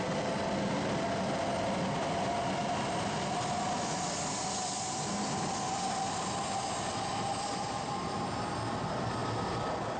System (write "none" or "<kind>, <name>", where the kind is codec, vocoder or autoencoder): none